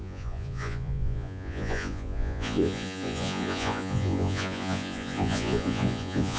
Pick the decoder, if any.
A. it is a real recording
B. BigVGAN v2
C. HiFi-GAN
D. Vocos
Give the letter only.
D